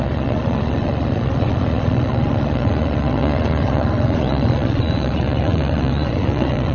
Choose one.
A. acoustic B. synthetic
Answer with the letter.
B